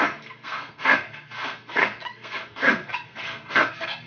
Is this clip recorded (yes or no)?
no